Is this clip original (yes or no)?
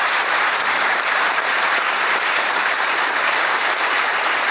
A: no